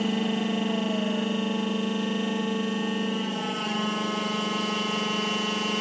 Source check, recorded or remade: recorded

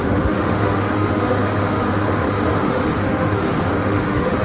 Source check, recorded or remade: remade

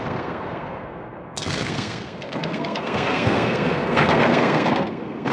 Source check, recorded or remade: remade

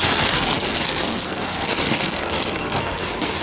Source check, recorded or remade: remade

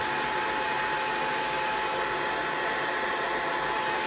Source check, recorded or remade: recorded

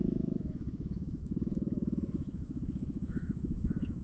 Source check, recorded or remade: remade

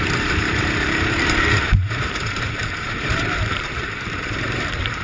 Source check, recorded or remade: remade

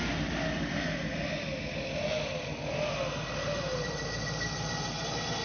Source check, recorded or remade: recorded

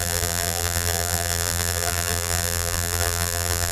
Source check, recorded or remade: remade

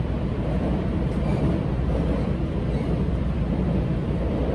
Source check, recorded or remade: remade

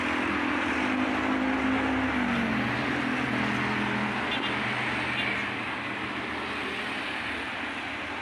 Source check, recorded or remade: recorded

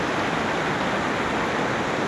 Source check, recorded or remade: recorded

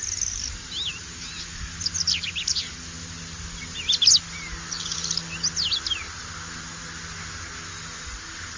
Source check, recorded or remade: recorded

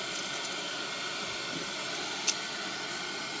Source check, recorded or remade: recorded